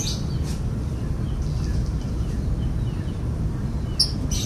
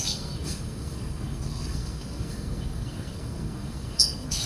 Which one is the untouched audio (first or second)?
first